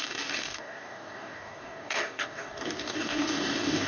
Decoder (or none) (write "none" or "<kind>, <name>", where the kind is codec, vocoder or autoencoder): codec, DAC